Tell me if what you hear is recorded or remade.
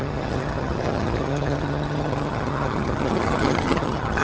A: remade